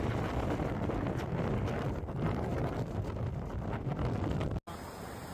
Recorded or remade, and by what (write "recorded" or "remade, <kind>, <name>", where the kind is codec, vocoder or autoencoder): recorded